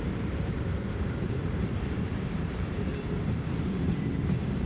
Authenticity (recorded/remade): remade